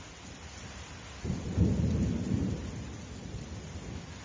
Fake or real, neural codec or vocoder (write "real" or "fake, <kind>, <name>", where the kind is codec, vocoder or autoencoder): real